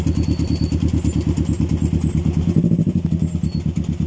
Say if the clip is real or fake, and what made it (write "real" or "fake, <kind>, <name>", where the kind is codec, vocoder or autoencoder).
real